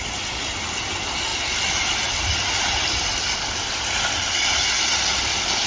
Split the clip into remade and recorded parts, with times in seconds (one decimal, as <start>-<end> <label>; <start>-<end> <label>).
0.0-5.7 recorded